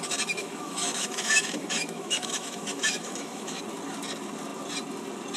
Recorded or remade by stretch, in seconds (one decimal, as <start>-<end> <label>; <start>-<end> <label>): 0.0-0.4 recorded; 0.4-3.6 remade; 3.6-5.4 recorded